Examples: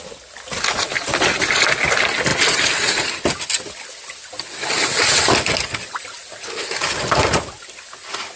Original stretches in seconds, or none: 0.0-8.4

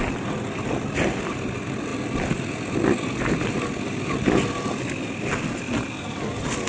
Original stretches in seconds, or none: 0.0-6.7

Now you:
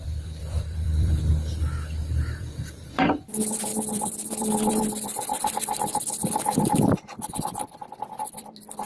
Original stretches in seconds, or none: 1.3-2.0

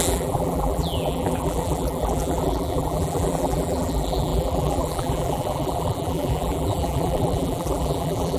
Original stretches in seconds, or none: none

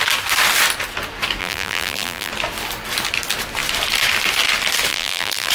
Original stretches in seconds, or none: 0.0-1.4; 2.3-4.9

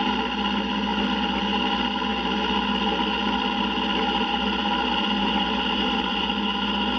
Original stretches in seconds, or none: 0.0-7.0

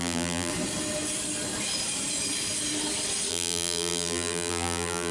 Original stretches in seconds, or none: 0.5-3.3

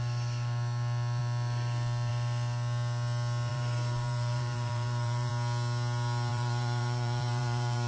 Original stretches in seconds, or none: 0.0-3.5; 5.3-6.3